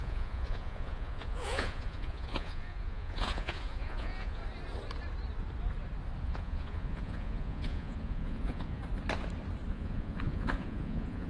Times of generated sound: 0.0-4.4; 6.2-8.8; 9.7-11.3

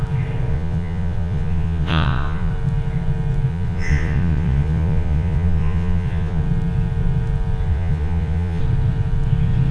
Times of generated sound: 0.5-2.5; 3.5-6.4; 7.7-8.6

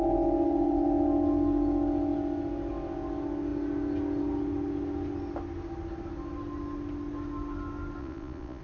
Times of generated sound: 8.0-8.6

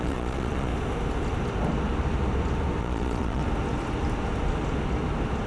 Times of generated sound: 0.0-0.7; 2.8-3.4

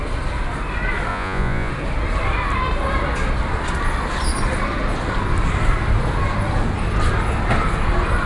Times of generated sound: 1.1-1.7

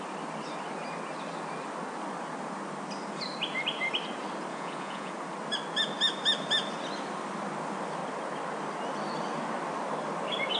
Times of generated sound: 4.5-5.1

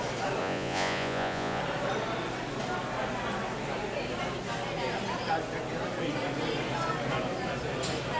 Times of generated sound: 0.4-1.6